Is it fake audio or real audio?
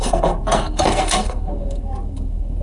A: fake